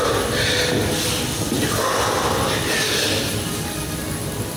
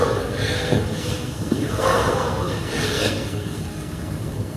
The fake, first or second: second